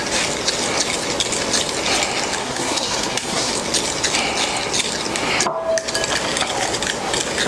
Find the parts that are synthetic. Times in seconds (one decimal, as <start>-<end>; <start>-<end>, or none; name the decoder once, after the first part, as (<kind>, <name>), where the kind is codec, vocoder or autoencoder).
2.4-3.5 (codec, SNAC)